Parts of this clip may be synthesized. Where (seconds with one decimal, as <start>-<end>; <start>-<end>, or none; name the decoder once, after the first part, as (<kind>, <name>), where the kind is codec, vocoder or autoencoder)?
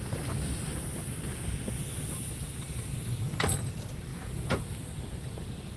4.1-4.6 (vocoder, Vocos)